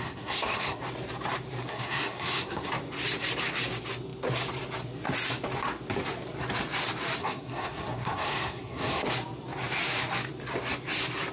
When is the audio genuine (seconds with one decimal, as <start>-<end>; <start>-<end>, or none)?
0.8-1.7; 2.7-7.2; 9.0-11.3